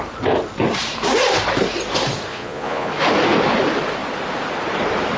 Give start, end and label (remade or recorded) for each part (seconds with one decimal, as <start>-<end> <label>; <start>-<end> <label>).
0.0-2.3 recorded; 2.3-2.9 remade; 2.9-5.2 recorded